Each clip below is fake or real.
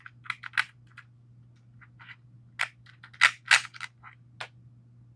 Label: real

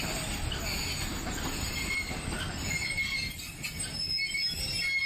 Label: real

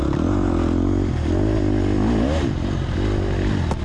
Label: real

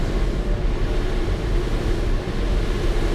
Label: real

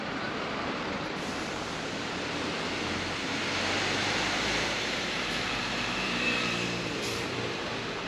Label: fake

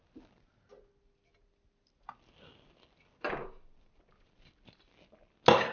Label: real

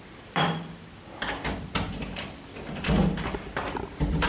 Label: fake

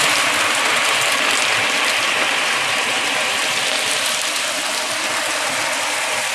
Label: fake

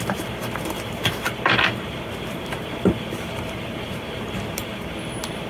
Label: fake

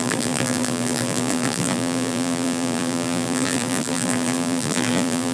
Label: fake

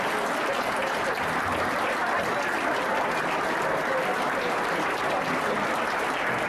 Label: real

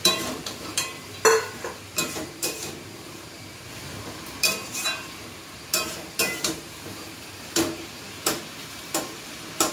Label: fake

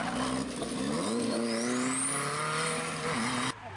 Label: real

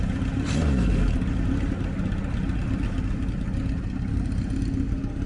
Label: real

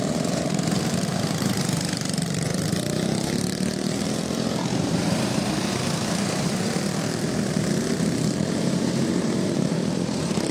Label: fake